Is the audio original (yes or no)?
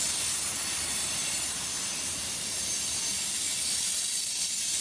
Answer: yes